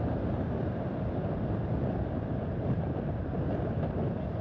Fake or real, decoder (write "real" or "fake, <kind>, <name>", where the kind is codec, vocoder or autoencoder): real